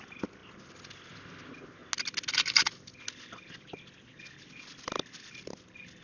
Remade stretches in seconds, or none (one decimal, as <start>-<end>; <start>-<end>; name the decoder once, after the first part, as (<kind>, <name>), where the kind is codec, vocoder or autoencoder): 0.4-1.1 (vocoder, BigVGAN v2)